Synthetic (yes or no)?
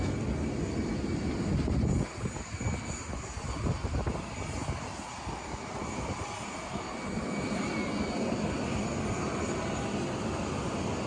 no